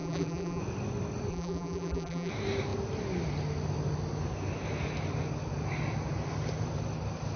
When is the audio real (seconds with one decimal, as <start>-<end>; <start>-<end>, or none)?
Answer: 0.6-1.3; 2.3-7.4